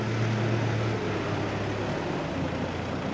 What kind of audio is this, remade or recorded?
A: recorded